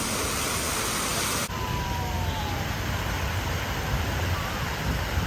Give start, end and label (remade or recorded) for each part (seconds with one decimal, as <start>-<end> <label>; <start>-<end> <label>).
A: 0.0-5.3 remade